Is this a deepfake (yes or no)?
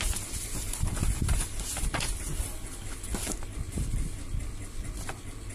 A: no